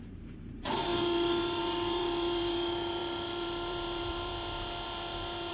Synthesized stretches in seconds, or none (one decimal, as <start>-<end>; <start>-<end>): 0.0-5.5